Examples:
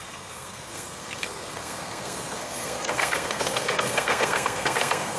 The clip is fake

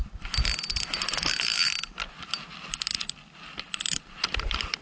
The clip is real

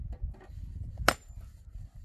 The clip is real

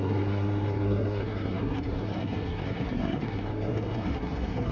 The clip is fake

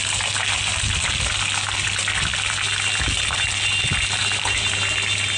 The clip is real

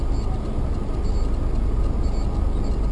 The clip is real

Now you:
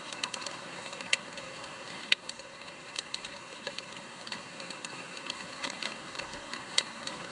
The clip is fake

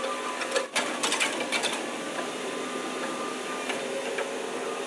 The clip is real